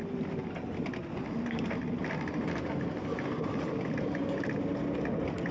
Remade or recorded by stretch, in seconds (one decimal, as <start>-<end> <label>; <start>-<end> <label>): 0.0-5.5 recorded